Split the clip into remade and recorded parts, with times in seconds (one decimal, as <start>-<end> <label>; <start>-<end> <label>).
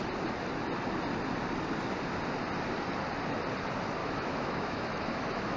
0.0-4.0 recorded; 4.0-5.6 remade